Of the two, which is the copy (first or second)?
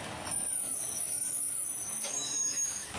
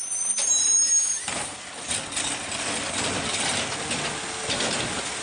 first